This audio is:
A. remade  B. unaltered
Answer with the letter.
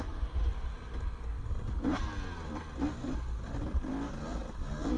B